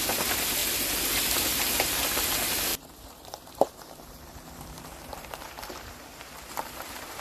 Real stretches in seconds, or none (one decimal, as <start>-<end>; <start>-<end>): 0.0-2.7